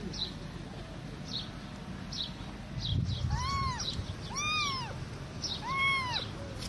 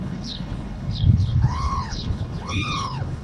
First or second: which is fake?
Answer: second